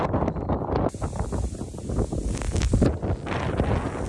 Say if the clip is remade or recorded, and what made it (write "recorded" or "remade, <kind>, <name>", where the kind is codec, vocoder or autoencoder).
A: recorded